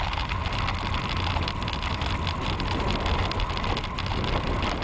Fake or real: real